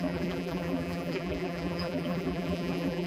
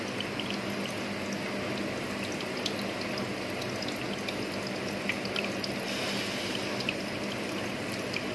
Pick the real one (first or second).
second